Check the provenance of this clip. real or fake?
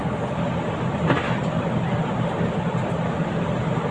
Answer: real